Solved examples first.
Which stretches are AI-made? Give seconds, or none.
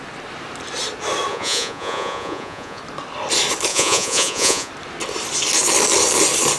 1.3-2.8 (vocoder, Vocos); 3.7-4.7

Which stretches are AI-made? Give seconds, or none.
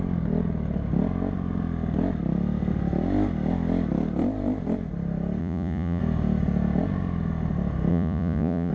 5.4-6.0 (vocoder, Vocos); 7.9-8.7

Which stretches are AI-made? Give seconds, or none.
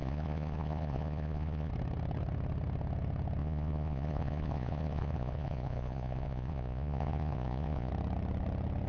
0.0-1.7 (vocoder, Vocos); 3.4-7.9